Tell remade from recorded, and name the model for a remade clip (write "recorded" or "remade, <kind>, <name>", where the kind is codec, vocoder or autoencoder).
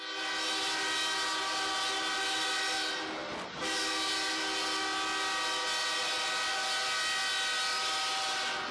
recorded